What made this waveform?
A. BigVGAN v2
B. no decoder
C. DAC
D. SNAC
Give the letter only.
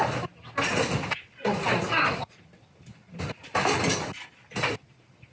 B